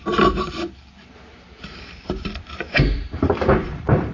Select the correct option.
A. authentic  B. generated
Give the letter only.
B